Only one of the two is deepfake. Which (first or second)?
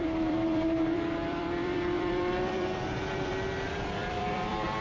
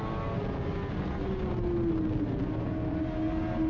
first